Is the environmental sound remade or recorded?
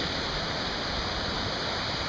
recorded